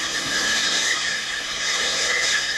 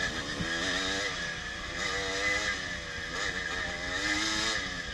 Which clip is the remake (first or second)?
first